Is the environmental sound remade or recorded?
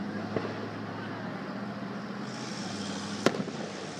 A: recorded